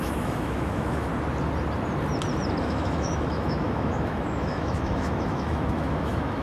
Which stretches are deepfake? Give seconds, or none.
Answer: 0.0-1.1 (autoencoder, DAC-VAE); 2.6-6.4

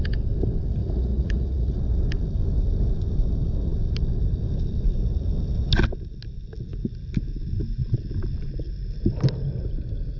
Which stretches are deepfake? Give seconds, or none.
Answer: 0.8-1.8 (vocoder, Vocos)

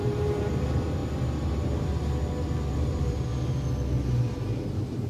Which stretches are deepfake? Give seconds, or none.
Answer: 0.0-1.0 (vocoder, BigVGAN v2); 2.7-3.3; 4.3-5.1

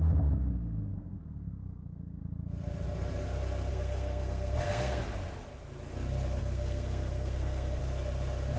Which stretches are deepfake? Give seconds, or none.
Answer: 0.9-2.2 (codec, SNAC); 3.7-5.0; 6.4-7.8

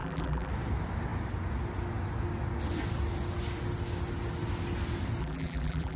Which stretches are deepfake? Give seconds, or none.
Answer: 0.0-0.5 (vocoder, BigVGAN v2); 5.2-6.0